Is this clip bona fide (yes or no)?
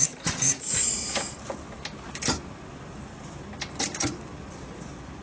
yes